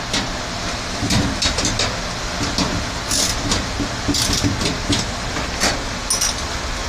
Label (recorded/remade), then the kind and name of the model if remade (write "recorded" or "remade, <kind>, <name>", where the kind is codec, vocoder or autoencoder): recorded